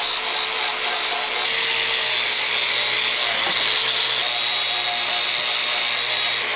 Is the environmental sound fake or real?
real